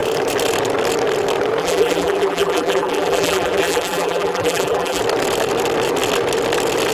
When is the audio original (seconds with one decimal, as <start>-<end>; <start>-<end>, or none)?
0.0-1.6; 5.0-6.9